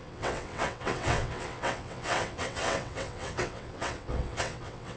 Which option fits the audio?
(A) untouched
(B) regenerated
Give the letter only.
B